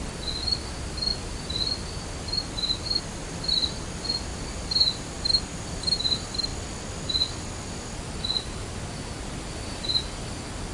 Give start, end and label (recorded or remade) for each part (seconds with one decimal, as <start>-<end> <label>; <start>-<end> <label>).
0.0-10.7 recorded